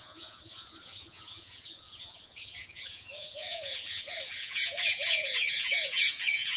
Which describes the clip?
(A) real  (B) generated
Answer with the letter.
B